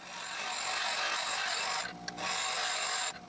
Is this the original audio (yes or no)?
yes